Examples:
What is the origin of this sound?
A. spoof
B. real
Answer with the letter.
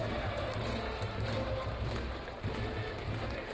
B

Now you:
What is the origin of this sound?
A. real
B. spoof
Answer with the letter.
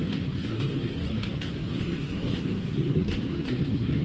B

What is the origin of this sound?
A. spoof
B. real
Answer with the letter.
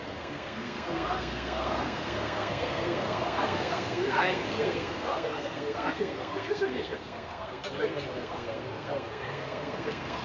A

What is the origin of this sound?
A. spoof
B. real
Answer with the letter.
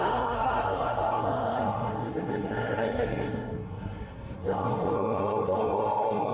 A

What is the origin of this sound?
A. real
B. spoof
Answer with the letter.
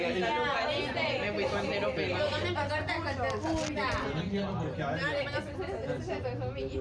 A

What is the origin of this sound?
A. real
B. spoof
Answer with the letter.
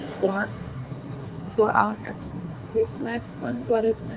B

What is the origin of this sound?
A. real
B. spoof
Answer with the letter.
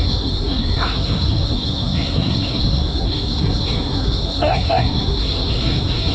B